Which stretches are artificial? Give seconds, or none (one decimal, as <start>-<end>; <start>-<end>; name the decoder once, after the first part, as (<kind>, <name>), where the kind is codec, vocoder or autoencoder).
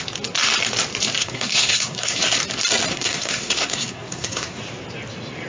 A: 1.2-2.2 (codec, SNAC); 2.9-4.6